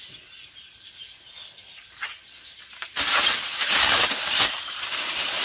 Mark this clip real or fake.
real